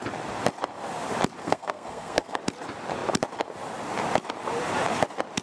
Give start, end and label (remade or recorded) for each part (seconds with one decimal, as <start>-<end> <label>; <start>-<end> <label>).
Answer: 0.0-1.4 recorded; 1.4-2.4 remade; 2.4-5.4 recorded